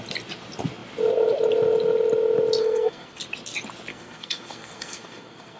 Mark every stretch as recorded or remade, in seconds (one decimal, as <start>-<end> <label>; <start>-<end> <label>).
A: 0.0-2.6 recorded; 2.6-3.2 remade; 3.2-3.9 recorded; 3.9-5.6 remade